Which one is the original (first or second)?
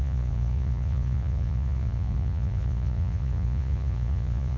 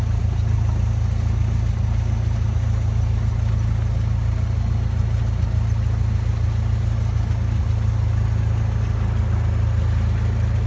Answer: second